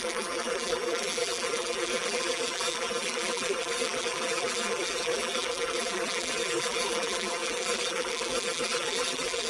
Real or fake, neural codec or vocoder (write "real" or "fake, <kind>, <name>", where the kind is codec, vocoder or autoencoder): fake, vocoder, BigVGAN v2